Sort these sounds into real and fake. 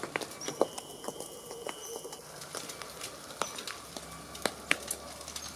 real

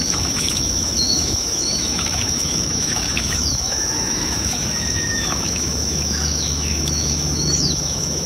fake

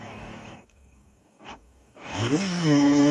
fake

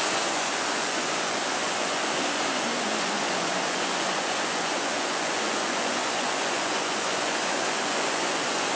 fake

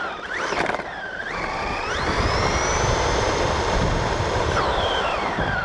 fake